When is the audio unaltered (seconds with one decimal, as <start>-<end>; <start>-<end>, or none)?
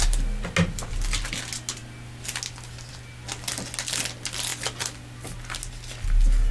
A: 0.0-6.5